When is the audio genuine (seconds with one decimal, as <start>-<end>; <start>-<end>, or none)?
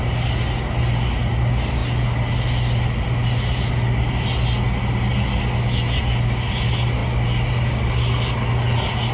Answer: 0.0-9.1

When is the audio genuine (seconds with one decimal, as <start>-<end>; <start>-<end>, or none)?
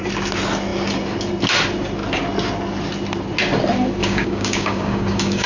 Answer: 0.0-4.0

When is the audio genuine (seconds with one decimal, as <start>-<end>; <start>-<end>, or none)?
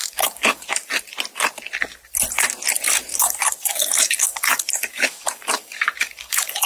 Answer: 0.9-3.1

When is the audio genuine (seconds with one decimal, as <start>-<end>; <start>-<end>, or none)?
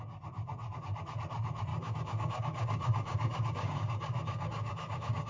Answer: 0.0-1.7